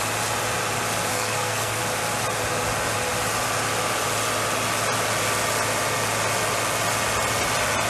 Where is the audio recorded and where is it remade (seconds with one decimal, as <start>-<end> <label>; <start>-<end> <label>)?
0.0-1.1 recorded; 1.1-1.8 remade; 1.8-7.9 recorded